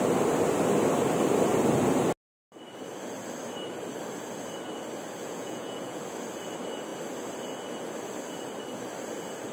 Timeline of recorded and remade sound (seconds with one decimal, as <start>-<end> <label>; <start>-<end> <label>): 0.0-5.2 recorded; 5.2-6.0 remade; 6.0-9.5 recorded